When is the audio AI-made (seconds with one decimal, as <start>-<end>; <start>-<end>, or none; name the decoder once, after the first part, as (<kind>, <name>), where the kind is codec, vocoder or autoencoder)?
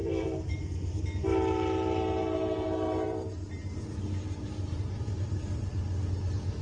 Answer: 0.0-1.0 (vocoder, BigVGAN v2); 2.2-5.4